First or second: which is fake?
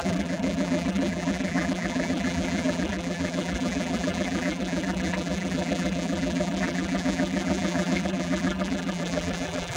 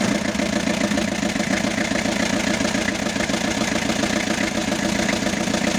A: first